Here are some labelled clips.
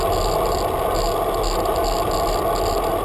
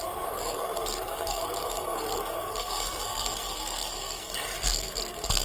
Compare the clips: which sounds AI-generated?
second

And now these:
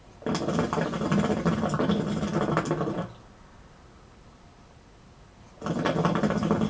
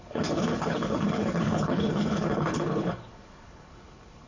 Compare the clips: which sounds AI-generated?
second